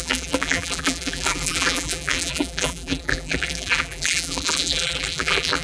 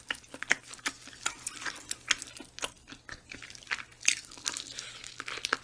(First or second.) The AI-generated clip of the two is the first